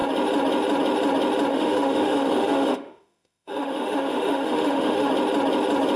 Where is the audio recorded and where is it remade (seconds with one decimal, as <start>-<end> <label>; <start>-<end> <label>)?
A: 0.0-1.5 recorded; 1.5-5.1 remade; 5.1-6.0 recorded